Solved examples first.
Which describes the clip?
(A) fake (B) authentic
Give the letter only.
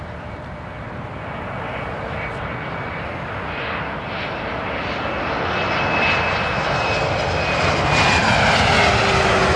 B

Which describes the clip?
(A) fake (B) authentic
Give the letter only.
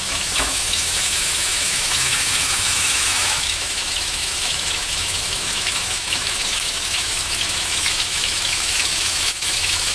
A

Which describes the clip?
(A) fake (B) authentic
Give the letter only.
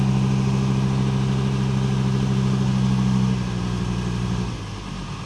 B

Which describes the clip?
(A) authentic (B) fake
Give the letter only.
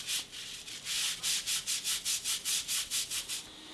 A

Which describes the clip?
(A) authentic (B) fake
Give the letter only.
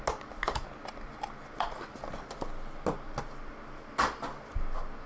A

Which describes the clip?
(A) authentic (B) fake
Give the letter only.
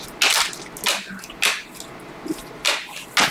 A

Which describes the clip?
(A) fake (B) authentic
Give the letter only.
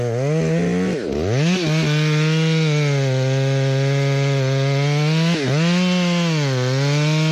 B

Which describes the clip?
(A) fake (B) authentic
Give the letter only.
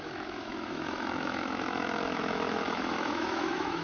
A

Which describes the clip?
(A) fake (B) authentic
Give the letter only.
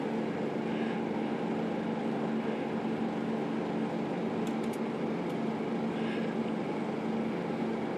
B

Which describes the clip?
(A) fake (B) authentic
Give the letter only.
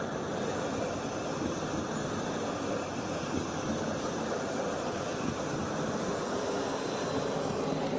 B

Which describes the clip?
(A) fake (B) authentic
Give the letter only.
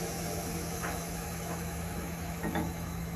A